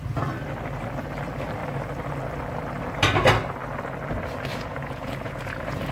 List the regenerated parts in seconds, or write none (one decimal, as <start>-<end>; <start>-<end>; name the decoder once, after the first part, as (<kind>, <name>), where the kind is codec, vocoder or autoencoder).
4.5-5.9 (vocoder, Vocos)

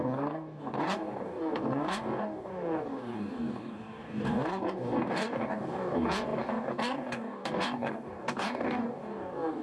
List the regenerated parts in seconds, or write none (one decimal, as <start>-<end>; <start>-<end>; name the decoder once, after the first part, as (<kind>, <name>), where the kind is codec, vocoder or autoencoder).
0.0-9.6 (codec, DAC)

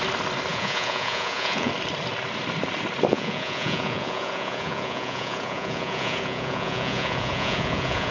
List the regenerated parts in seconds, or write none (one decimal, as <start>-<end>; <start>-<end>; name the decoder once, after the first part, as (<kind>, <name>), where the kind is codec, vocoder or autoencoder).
0.5-1.7 (vocoder, Vocos); 3.1-8.1

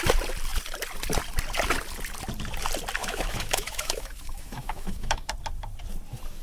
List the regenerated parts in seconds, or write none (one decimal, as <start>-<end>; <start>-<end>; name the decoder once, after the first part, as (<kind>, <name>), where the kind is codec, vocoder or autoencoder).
3.0-5.3 (autoencoder, DAC-VAE)

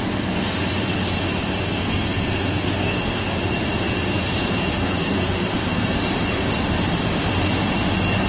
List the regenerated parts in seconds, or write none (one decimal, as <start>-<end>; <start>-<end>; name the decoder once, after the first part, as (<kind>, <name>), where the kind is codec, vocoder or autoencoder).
1.8-3.3 (codec, SNAC); 4.8-6.0

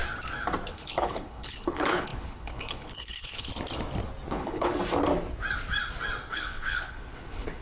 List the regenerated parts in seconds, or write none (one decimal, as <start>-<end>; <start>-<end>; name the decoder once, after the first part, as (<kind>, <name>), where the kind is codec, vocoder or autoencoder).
0.7-3.5 (codec, HILCodec); 4.3-4.7; 6.3-7.6

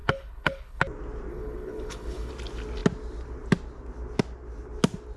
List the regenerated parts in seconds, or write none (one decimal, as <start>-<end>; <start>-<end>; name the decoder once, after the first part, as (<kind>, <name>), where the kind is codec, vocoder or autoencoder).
0.0-0.8 (codec, HILCodec); 1.3-2.3

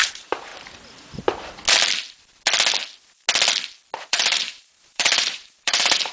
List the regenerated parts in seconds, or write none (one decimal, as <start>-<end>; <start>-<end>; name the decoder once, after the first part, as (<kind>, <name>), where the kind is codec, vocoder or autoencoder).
0.0-0.5 (vocoder, BigVGAN v2); 4.1-6.1